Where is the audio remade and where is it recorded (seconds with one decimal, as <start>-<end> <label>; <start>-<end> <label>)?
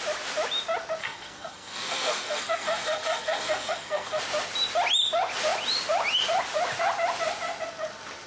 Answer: 0.0-1.0 recorded; 1.0-4.2 remade; 4.2-8.3 recorded